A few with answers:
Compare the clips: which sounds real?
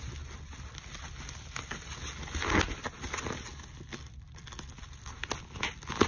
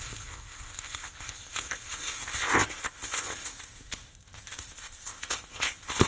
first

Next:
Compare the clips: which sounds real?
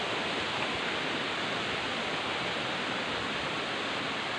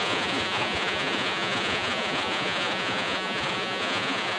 first